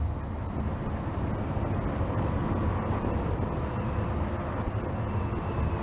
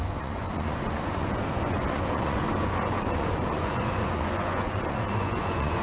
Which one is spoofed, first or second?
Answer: second